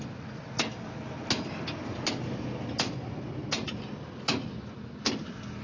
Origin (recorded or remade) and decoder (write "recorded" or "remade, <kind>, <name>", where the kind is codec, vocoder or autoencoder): recorded